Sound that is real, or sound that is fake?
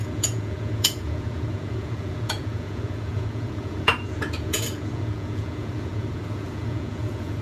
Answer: fake